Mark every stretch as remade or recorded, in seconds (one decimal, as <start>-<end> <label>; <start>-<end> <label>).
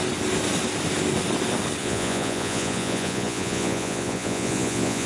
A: 0.0-1.8 recorded; 1.8-5.1 remade